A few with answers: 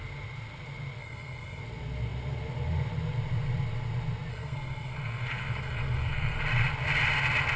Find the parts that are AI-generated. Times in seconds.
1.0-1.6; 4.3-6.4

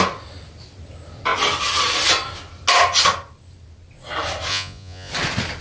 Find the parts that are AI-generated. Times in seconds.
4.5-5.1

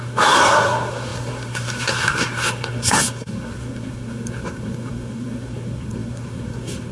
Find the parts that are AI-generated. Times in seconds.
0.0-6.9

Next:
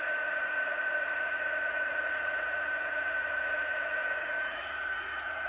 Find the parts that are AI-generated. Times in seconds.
0.0-5.5